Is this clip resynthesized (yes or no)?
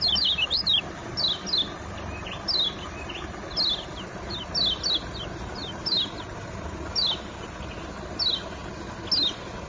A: no